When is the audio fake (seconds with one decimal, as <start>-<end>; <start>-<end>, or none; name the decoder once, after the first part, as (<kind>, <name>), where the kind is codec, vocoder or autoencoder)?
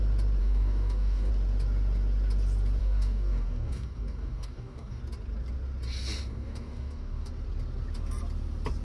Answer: 0.4-1.3 (codec, DAC); 2.8-5.0; 6.3-7.3